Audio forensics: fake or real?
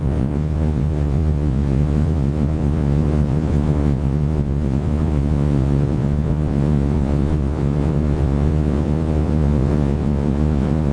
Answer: fake